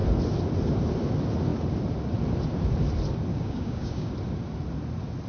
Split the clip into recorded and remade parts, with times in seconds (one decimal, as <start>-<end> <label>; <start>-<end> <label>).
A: 0.0-3.3 recorded; 3.3-4.1 remade; 4.1-5.3 recorded